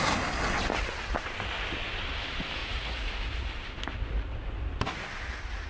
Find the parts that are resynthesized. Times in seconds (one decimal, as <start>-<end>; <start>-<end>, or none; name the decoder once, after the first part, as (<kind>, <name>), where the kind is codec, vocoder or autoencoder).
2.6-3.1 (vocoder, Vocos)

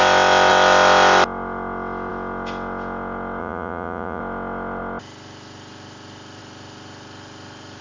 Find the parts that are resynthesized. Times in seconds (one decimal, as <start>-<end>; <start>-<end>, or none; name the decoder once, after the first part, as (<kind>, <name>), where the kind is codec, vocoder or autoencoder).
3.4-4.2 (vocoder, Vocos)

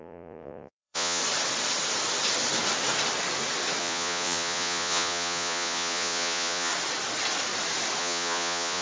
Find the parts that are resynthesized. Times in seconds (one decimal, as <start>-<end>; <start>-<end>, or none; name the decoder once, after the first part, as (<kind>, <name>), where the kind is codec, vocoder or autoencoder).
0.0-1.2 (vocoder, Vocos); 3.8-6.7; 8.0-8.8

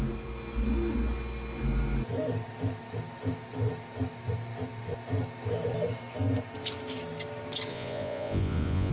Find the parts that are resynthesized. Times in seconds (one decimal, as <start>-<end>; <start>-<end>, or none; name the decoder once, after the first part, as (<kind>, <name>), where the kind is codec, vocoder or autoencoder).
7.7-8.9 (vocoder, Vocos)